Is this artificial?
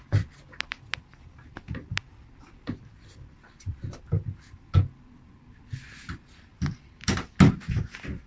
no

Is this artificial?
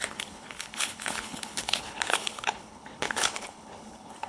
yes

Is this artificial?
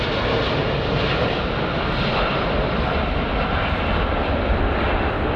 no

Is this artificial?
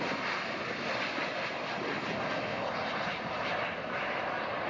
no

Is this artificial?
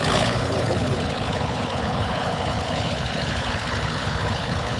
yes